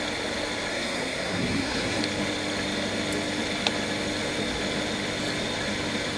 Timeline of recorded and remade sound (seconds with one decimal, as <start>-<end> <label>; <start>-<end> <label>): 0.0-0.7 recorded; 0.7-2.0 remade; 2.0-6.2 recorded